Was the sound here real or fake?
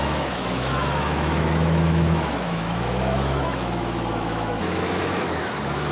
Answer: fake